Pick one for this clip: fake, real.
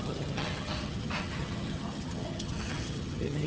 fake